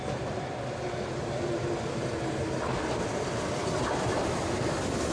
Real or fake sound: fake